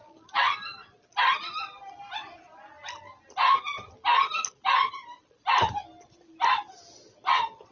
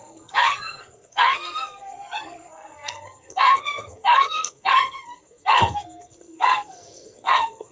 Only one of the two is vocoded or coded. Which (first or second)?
second